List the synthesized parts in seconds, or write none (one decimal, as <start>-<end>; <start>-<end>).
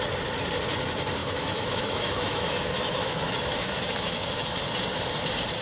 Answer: 1.2-4.6